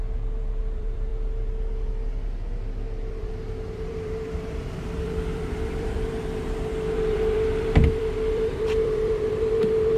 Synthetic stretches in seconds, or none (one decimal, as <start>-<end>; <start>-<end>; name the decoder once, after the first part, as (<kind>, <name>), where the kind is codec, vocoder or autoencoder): 0.0-1.1 (vocoder, BigVGAN v2); 3.1-10.0